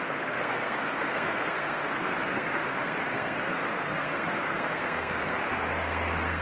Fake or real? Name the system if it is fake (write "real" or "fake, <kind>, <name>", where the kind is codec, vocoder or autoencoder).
fake, codec, SNAC